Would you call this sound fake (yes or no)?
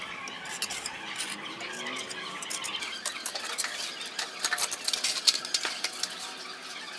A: no